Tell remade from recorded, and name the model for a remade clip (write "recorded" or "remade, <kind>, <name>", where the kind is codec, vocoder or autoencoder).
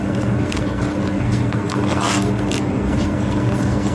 remade, codec, SNAC